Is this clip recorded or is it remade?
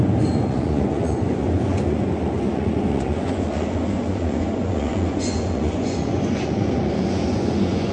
remade